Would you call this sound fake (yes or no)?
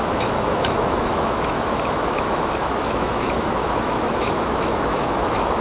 yes